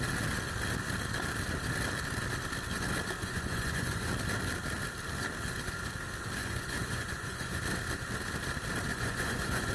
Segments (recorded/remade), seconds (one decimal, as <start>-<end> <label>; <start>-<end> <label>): 0.0-3.2 recorded; 3.2-4.1 remade; 4.1-6.4 recorded; 6.4-7.6 remade; 7.6-8.9 recorded; 8.9-9.7 remade